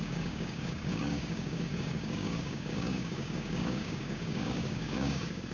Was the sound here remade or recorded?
remade